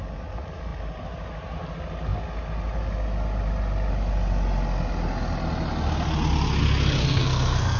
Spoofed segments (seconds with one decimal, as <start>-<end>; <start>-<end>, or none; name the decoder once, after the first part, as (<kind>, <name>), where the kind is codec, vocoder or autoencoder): 7.0-7.8 (codec, SNAC)